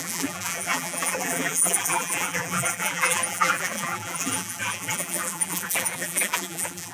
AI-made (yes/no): yes